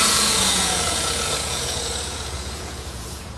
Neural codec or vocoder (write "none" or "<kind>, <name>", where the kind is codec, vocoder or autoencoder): vocoder, Vocos